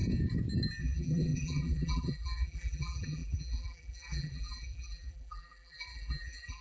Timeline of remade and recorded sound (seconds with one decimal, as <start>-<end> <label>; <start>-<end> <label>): 0.0-0.8 recorded; 0.8-6.6 remade